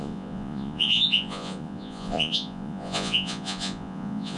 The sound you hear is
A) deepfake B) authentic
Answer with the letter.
A